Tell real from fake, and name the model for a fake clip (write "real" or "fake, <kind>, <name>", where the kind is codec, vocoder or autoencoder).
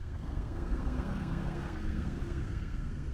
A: fake, codec, SNAC